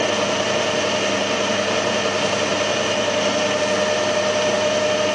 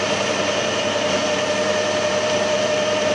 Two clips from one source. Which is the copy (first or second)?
second